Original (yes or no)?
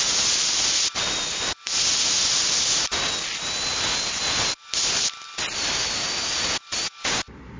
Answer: yes